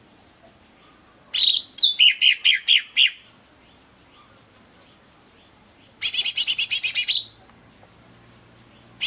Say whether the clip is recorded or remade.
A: recorded